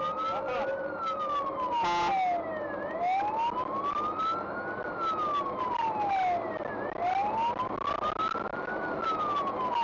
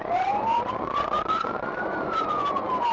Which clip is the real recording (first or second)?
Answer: first